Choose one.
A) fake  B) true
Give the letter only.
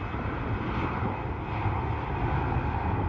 B